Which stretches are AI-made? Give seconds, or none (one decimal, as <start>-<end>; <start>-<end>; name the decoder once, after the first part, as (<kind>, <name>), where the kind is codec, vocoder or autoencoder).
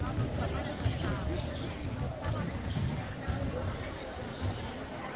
2.6-3.2 (codec, SNAC)